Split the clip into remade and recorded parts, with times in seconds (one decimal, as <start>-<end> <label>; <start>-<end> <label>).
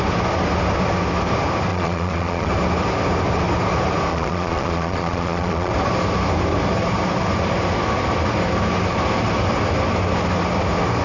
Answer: 0.0-1.7 recorded; 1.7-2.5 remade; 2.5-4.1 recorded; 4.1-5.7 remade; 5.7-11.0 recorded